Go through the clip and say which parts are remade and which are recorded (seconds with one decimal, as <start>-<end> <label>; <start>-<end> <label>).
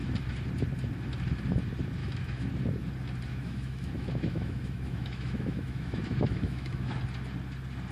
0.0-2.0 recorded; 2.0-2.5 remade; 2.5-3.3 recorded; 3.3-7.0 remade; 7.0-7.9 recorded